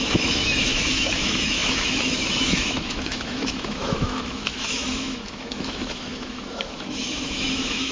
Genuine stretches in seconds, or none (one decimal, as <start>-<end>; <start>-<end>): none

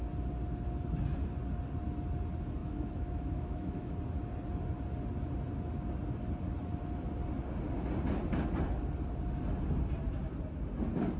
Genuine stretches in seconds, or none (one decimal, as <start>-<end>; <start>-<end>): 0.0-2.6; 3.9-11.2

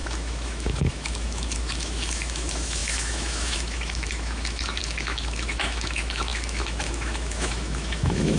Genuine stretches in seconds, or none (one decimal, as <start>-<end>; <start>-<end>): none

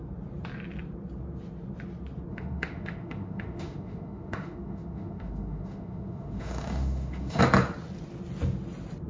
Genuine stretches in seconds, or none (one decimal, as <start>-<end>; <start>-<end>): 0.0-2.3; 7.4-9.1

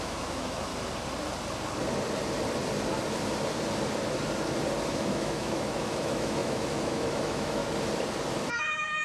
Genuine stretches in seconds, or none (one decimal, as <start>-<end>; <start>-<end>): 0.7-4.9; 7.6-8.5